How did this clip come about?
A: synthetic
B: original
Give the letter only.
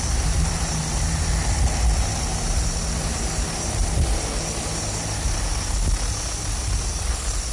B